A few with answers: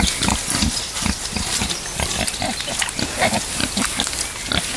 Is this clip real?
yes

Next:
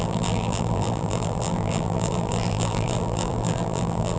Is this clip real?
no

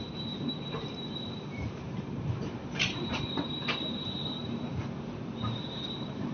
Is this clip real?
no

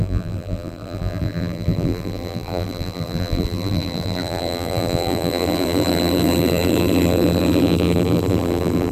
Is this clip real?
no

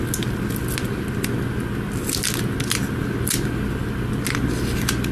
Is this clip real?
yes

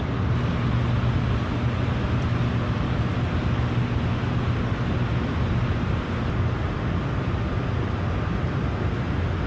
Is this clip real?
yes